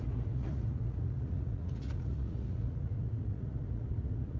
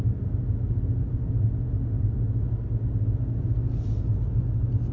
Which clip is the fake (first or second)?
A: first